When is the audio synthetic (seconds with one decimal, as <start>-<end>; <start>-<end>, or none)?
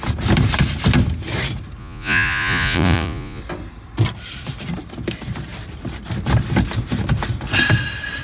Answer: 1.8-3.4